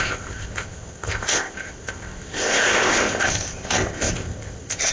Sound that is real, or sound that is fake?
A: fake